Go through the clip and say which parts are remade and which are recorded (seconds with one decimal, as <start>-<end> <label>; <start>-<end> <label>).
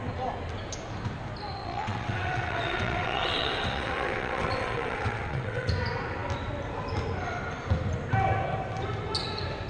0.0-1.6 recorded; 1.6-5.7 remade; 5.7-9.7 recorded